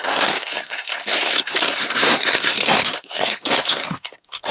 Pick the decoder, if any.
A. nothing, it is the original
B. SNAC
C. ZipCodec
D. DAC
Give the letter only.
B